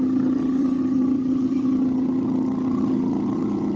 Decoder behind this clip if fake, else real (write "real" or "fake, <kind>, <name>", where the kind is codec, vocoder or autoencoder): fake, vocoder, HiFi-GAN